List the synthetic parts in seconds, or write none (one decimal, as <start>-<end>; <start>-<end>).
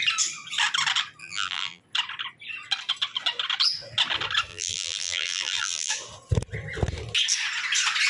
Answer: 1.2-1.8; 4.5-5.9